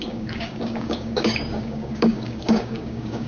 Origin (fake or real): fake